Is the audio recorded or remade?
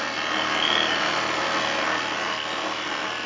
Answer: recorded